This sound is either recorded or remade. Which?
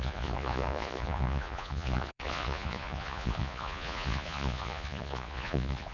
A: remade